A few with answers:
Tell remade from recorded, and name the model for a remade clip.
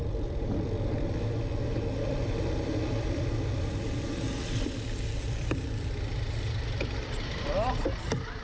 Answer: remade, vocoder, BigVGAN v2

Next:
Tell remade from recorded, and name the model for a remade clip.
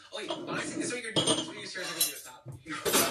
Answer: recorded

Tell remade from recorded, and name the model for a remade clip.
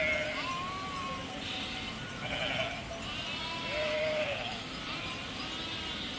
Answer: recorded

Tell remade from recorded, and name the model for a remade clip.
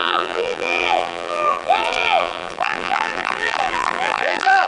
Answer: remade, vocoder, BigVGAN v2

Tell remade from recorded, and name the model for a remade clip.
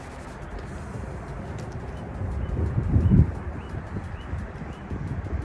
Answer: remade, vocoder, BigVGAN v2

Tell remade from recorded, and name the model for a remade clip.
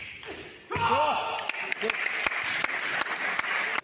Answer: recorded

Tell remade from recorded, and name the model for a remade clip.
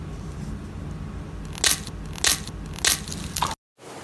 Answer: recorded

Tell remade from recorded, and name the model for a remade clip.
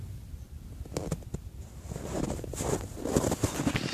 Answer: recorded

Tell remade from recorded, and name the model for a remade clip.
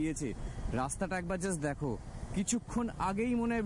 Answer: recorded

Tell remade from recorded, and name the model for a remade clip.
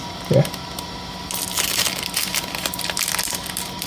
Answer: recorded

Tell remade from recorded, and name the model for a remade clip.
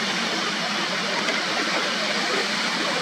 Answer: recorded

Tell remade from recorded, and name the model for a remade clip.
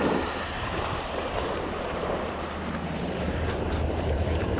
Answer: remade, vocoder, BigVGAN v2